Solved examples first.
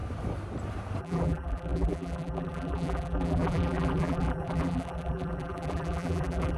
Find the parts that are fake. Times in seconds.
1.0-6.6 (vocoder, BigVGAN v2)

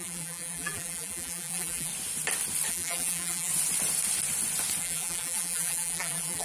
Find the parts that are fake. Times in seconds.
0.0-1.9 (vocoder, BigVGAN v2); 2.7-3.5; 4.8-6.4

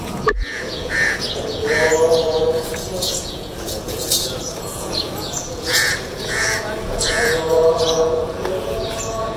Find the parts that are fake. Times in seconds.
0.0-9.4 (vocoder, Vocos)

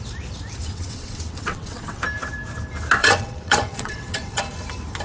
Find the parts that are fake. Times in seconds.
0.6-2.0 (vocoder, WaveNeXt); 3.0-4.4

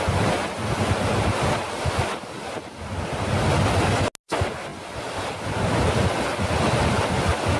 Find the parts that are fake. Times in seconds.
none

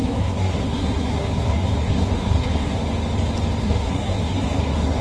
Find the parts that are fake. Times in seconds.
0.0-2.8 (codec, SNAC); 3.6-5.0

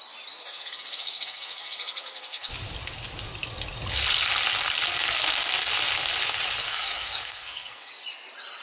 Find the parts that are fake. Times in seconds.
0.4-2.5 (codec, SNAC); 6.6-7.9